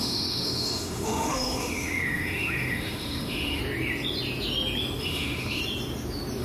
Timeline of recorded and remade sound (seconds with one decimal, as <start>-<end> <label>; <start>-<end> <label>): 0.0-3.6 remade; 3.6-5.0 recorded; 5.0-5.6 remade; 5.6-6.4 recorded